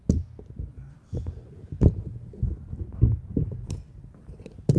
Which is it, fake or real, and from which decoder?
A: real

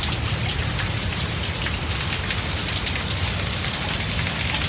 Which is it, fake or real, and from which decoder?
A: real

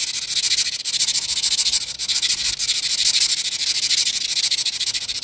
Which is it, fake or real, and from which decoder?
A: real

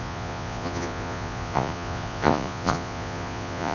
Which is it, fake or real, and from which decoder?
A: fake, vocoder, Vocos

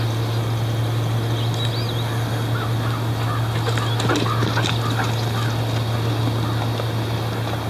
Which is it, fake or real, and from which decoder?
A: real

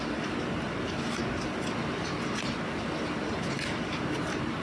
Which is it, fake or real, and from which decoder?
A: real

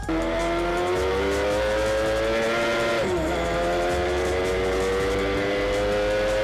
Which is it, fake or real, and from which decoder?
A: real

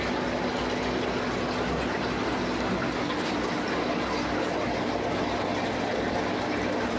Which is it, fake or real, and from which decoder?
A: real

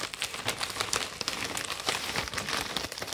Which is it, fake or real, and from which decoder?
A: real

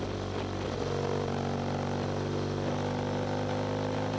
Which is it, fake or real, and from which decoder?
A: real